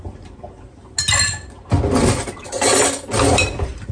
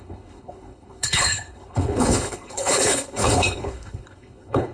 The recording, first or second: first